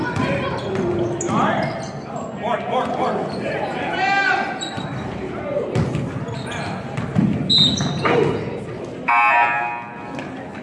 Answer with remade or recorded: recorded